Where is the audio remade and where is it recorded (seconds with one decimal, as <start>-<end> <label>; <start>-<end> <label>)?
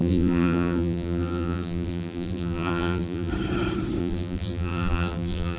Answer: 0.0-3.3 remade; 3.3-4.0 recorded; 4.0-5.6 remade